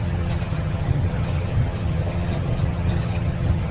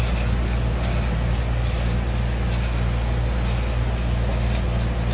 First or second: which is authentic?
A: second